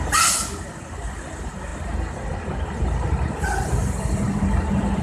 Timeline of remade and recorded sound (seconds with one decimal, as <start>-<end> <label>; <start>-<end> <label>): 0.0-5.0 recorded